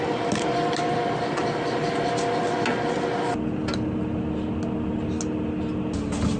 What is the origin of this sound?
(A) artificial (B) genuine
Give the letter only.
B